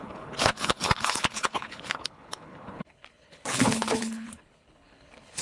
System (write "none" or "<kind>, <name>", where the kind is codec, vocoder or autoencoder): codec, HILCodec